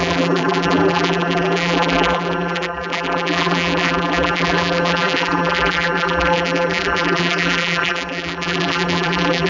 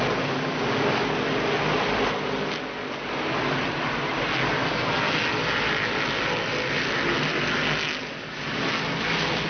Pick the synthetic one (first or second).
first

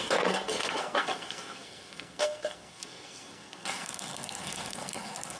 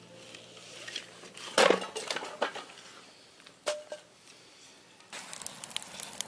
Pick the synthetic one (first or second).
first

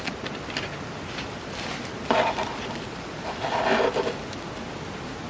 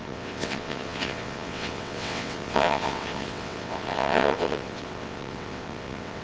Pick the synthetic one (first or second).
second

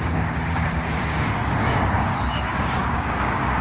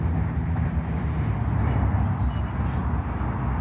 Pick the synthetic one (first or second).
first